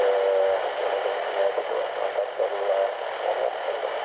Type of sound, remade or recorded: recorded